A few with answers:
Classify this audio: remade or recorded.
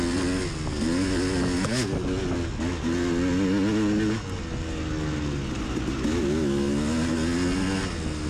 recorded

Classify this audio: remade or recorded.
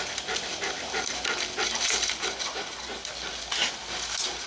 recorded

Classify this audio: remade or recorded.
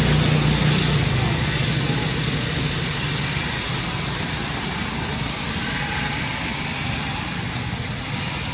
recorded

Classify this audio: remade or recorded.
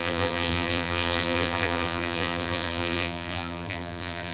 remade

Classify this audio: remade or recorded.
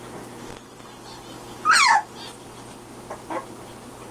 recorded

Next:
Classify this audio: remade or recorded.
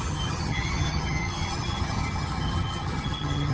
remade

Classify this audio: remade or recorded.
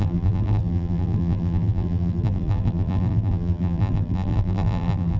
remade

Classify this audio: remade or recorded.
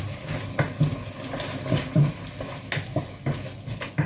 recorded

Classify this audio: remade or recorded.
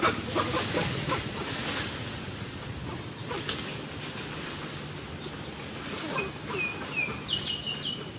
recorded